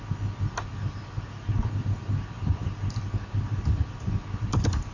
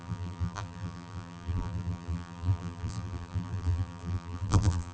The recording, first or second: first